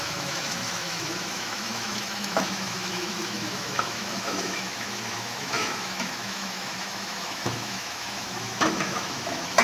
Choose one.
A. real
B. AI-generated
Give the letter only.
B